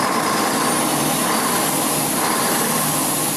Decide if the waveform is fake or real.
real